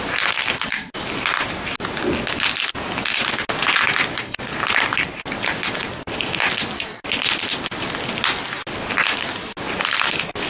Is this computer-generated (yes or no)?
no